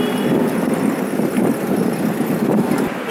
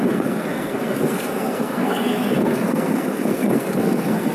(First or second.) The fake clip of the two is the second